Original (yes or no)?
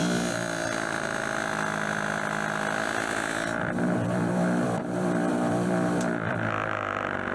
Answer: no